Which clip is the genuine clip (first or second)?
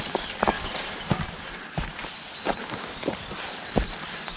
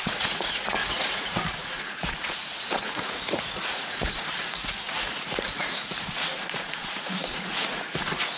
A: first